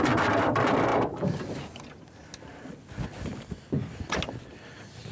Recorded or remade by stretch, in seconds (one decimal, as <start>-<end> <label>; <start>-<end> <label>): 0.0-5.1 recorded